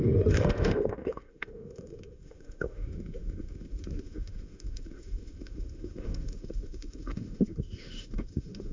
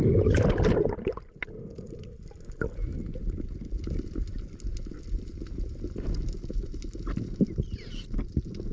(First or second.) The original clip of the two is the second